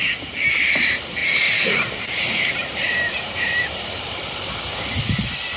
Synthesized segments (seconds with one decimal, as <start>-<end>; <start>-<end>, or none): 1.2-4.5